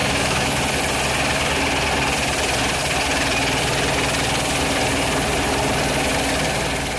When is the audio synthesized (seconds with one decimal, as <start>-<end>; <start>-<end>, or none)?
0.0-0.6

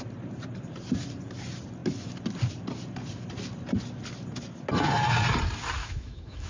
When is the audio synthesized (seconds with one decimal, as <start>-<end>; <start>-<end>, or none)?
5.8-6.5

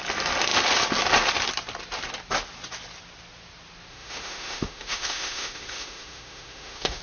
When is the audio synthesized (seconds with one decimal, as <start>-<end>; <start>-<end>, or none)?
3.9-7.0

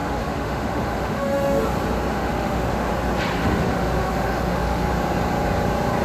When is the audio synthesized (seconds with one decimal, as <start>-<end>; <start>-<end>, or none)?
0.0-1.6; 2.1-2.9; 3.4-4.9